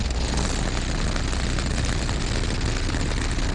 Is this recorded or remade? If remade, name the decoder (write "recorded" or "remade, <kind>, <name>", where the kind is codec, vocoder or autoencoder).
recorded